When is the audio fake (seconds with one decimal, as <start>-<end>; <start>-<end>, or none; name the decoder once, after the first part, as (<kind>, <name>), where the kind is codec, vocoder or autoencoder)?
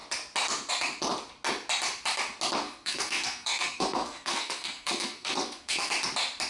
2.6-5.9 (codec, SNAC)